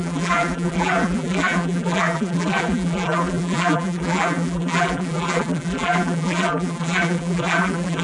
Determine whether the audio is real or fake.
fake